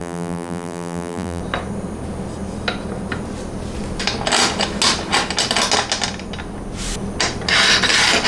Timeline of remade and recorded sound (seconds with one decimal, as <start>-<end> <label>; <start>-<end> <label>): 0.0-1.4 remade; 1.4-8.3 recorded